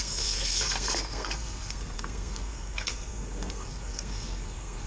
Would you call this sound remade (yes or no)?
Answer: yes